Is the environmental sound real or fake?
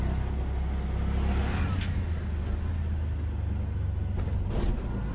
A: real